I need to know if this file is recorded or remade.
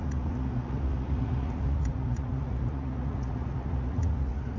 remade